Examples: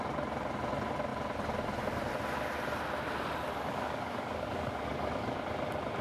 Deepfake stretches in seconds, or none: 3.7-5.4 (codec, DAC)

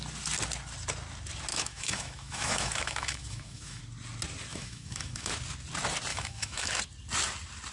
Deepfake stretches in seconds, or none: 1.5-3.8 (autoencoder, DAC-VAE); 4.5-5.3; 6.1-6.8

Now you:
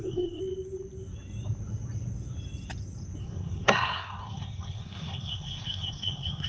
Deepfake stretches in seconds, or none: 0.0-0.4 (codec, SNAC); 3.2-6.5

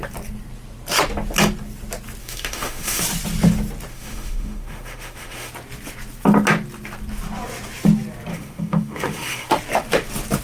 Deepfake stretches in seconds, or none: 2.2-3.0 (autoencoder, DAC-VAE); 3.9-5.5; 8.3-9.5